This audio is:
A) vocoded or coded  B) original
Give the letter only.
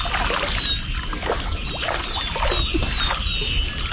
B